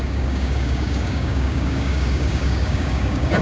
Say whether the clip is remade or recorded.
remade